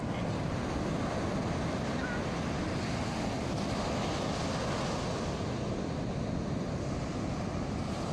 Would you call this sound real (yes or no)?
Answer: yes